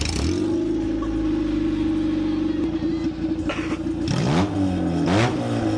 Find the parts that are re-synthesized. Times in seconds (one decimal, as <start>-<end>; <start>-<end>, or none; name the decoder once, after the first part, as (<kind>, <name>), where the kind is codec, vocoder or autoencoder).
none

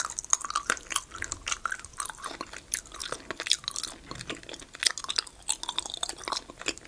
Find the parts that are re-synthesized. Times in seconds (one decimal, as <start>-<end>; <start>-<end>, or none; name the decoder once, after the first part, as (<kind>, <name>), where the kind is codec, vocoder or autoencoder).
none

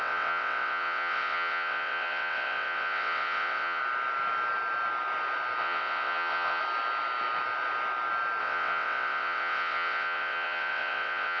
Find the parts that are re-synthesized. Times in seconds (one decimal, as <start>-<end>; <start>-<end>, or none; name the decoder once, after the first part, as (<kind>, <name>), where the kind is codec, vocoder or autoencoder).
0.0-3.8 (vocoder, WaveNeXt); 5.6-6.6; 8.4-11.4